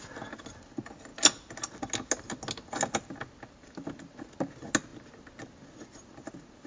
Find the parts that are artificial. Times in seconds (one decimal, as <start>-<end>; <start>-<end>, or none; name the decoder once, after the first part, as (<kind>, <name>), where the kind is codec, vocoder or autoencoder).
none